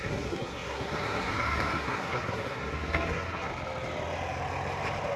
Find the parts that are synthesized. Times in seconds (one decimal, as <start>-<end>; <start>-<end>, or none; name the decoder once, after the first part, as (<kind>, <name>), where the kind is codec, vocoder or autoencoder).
0.0-3.5 (codec, SNAC)